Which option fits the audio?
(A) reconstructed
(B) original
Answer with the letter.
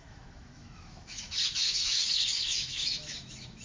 A